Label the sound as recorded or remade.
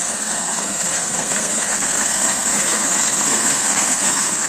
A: remade